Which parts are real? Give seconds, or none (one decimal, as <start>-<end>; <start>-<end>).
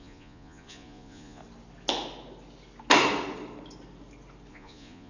1.4-4.5